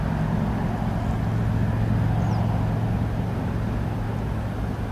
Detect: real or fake real